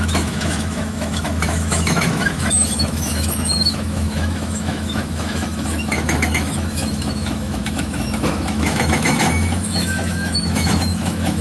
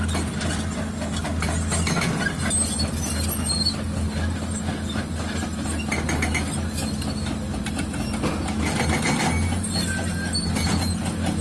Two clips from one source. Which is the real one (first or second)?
second